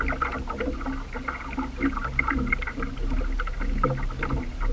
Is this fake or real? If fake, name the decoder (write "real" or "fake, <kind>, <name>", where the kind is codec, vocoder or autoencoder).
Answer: real